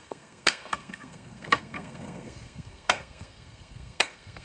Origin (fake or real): fake